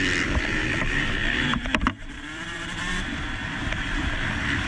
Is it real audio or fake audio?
fake